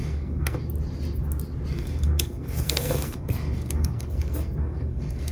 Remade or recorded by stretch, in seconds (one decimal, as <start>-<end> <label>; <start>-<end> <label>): 0.0-0.6 remade; 0.6-1.7 recorded; 1.7-5.3 remade